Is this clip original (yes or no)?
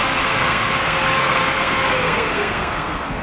no